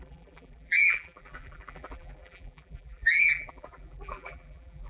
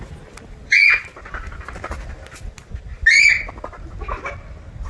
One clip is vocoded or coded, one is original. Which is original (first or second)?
second